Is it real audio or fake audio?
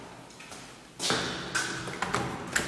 real